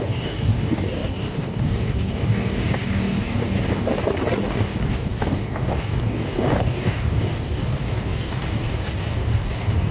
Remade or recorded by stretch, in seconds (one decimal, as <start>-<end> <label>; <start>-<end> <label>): 0.0-3.9 remade; 3.9-4.5 recorded; 4.5-9.9 remade